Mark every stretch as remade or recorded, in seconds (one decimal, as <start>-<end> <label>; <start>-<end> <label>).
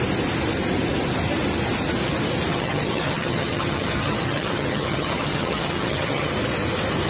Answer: 0.0-2.5 recorded; 2.5-6.3 remade; 6.3-7.1 recorded